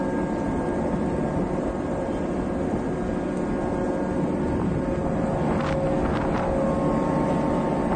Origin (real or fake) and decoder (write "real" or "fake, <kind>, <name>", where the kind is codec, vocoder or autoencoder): real